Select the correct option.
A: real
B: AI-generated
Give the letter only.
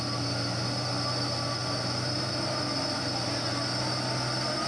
A